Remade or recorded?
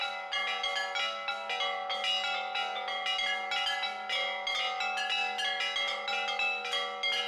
recorded